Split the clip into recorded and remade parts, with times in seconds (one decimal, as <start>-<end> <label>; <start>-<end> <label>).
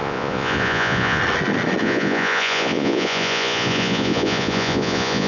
0.0-1.2 remade; 1.2-1.8 recorded; 1.8-5.3 remade